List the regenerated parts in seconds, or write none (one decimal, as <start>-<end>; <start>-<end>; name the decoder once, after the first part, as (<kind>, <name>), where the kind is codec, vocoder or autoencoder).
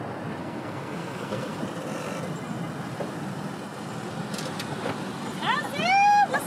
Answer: 0.4-1.6 (codec, SNAC)